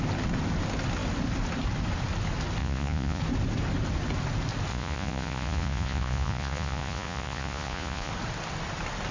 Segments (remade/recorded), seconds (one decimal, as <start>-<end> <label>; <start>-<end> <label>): 0.0-2.6 recorded; 2.6-3.2 remade; 3.2-4.7 recorded; 4.7-8.1 remade; 8.1-9.1 recorded